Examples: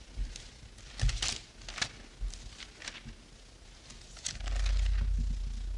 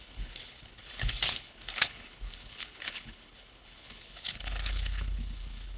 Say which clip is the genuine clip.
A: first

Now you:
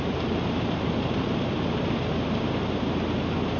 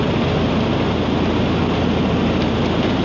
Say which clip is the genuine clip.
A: second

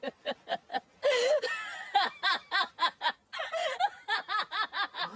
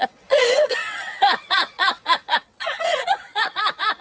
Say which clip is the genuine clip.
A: first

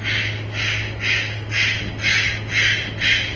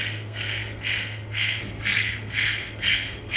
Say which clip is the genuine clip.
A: first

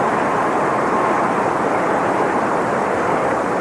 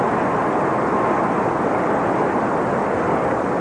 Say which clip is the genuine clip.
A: second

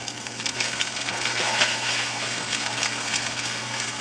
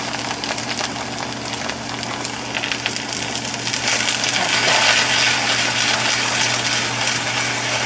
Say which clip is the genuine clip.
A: second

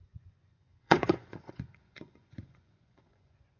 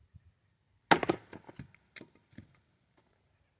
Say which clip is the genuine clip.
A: second